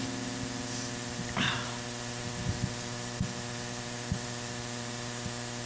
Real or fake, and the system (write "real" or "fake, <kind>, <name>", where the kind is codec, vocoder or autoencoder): real